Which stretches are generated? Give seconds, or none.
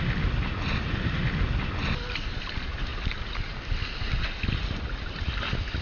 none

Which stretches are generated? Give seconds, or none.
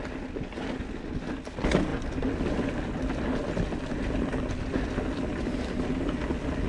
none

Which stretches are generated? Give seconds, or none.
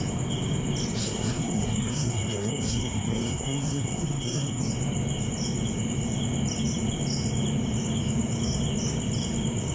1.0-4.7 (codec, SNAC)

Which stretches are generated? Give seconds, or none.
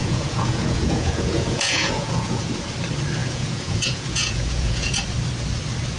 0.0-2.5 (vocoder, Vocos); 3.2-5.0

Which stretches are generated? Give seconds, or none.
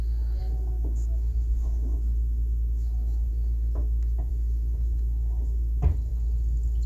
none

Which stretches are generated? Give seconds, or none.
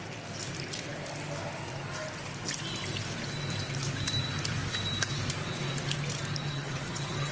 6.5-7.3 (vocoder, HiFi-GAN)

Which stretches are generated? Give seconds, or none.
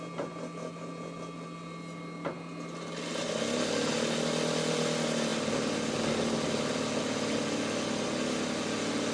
none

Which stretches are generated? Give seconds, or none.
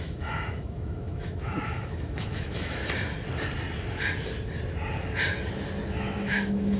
0.0-2.8 (autoencoder, DAC-VAE); 5.9-6.8